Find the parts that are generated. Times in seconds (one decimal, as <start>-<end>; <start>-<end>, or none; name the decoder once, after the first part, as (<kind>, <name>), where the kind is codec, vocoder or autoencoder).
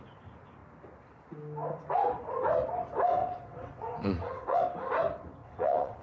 3.2-4.6 (vocoder, WaveNeXt); 5.4-6.0